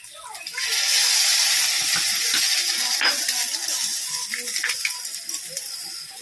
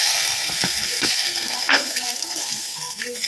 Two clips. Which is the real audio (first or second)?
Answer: first